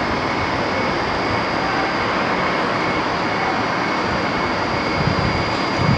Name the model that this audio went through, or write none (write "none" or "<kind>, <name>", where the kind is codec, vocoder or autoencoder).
none